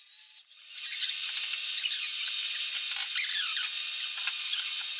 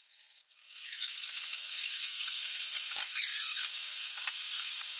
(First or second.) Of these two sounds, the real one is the first